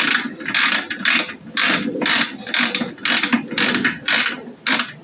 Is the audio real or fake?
real